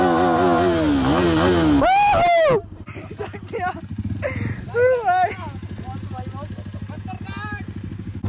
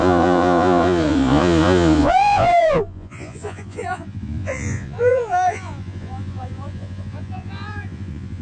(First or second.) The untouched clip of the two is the first